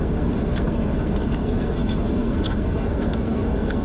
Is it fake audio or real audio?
fake